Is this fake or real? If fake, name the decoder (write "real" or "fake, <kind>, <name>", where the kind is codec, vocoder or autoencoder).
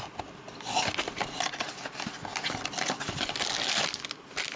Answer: real